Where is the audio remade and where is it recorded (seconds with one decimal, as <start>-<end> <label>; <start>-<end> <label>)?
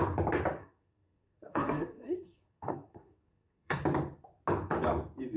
0.0-0.6 recorded; 0.6-3.8 remade; 3.8-5.4 recorded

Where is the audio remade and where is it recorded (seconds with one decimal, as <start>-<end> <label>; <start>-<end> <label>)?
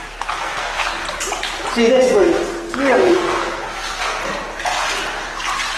0.0-1.0 remade; 1.0-1.9 recorded; 1.9-4.2 remade; 4.2-5.8 recorded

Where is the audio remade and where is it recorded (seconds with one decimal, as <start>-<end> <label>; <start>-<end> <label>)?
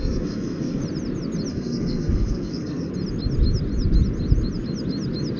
0.0-0.8 remade; 0.8-1.5 recorded; 1.5-2.9 remade; 2.9-5.4 recorded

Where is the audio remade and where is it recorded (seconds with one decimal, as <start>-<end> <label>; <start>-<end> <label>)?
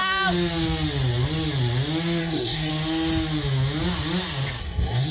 0.0-2.2 recorded; 2.2-2.7 remade; 2.7-4.6 recorded; 4.6-5.1 remade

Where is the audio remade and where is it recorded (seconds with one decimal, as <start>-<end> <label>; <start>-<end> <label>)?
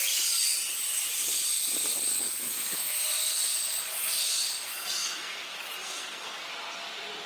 0.0-2.1 recorded; 2.1-6.5 remade; 6.5-7.3 recorded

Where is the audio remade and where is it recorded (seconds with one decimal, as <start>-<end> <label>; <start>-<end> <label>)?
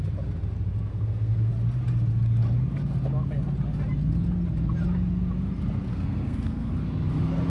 0.0-0.9 recorded; 0.9-1.5 remade; 1.5-5.9 recorded; 5.9-6.7 remade; 6.7-7.5 recorded